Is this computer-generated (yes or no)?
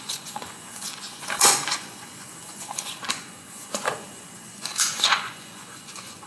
yes